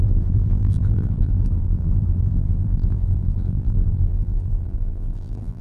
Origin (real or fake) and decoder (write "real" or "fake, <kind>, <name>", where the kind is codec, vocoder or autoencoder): fake, vocoder, BigVGAN v2